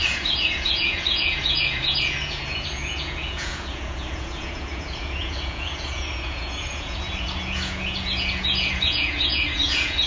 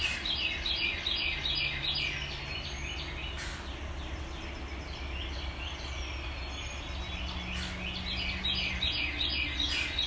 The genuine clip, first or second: second